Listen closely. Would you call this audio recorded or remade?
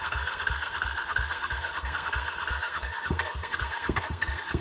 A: remade